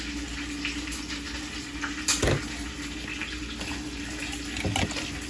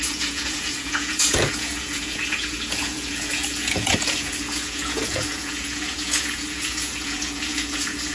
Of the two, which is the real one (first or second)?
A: first